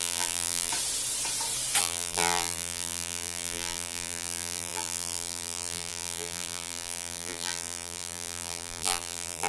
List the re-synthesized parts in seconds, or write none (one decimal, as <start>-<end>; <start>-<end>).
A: 0.0-0.7; 1.8-9.5